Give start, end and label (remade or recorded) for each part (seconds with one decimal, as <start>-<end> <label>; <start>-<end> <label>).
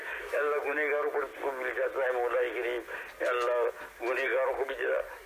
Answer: 0.0-1.3 remade; 1.3-4.5 recorded; 4.5-5.3 remade